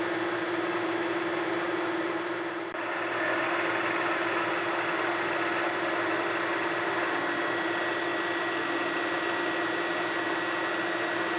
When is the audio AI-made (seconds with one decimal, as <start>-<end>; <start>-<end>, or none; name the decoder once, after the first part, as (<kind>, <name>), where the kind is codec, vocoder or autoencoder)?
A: none